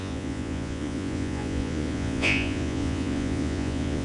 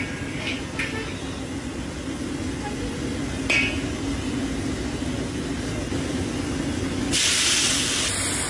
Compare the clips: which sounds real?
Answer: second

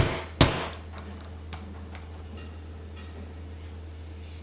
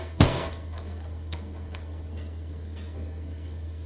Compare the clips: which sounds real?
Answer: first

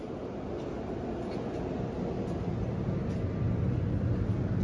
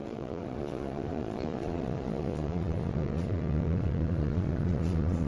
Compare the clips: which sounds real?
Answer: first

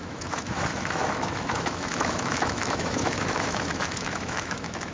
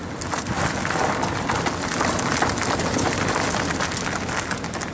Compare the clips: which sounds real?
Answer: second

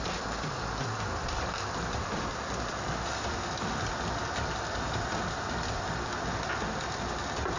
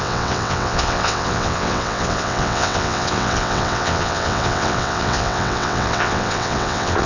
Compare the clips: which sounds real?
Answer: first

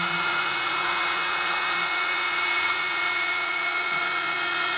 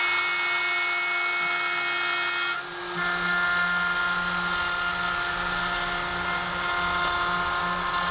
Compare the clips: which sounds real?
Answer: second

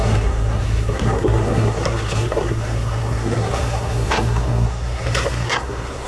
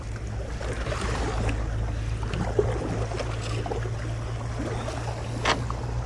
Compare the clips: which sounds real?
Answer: second